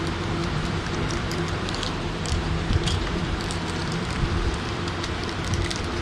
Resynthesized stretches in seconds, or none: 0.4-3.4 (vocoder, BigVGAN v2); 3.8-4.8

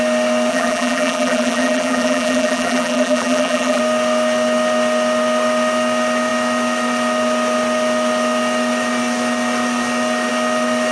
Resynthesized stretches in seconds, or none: 0.5-3.8 (vocoder, BigVGAN v2)

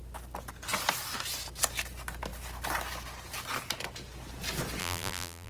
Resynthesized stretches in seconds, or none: 4.8-5.5 (vocoder, BigVGAN v2)